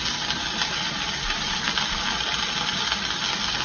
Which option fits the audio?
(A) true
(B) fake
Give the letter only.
A